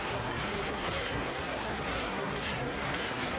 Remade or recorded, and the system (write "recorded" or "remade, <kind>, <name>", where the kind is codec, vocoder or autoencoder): remade, codec, SNAC